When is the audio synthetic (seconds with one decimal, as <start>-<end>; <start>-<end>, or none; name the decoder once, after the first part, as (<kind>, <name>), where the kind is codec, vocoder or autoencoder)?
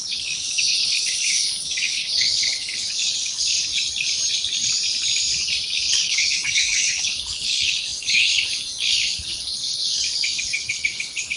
0.0-3.7 (codec, HILCodec); 5.9-11.4